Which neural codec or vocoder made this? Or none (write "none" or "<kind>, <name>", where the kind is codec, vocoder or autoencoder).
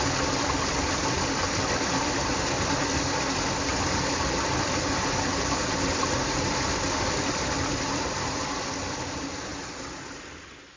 none